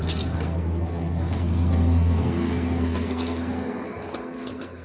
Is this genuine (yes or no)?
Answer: no